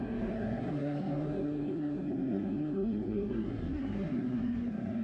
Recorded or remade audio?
remade